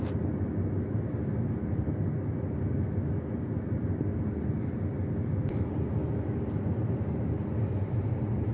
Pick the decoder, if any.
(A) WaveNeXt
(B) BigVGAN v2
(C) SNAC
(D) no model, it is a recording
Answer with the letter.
D